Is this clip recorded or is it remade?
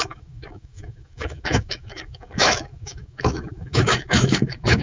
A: remade